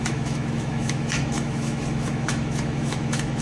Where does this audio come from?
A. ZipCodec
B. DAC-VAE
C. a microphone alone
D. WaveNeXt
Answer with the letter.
B